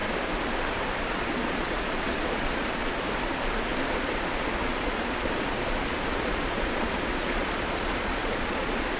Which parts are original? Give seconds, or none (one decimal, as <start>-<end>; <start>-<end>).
0.0-1.0; 2.8-3.9